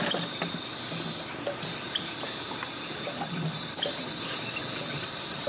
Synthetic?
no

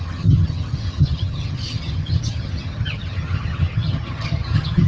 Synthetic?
yes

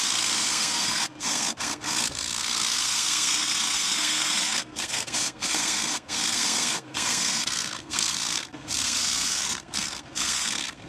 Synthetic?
yes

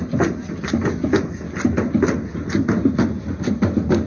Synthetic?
no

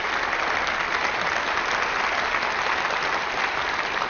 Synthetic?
no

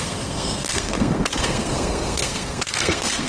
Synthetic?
yes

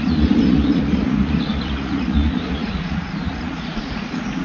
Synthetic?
yes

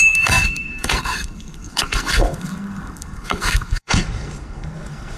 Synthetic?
yes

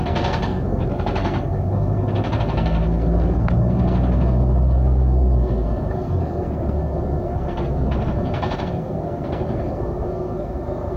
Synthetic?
yes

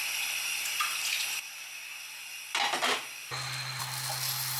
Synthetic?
no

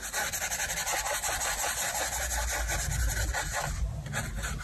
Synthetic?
no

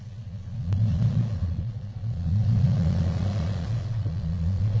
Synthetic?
yes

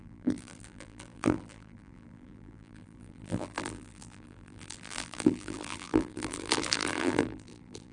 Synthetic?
yes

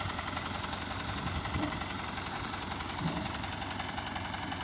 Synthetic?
yes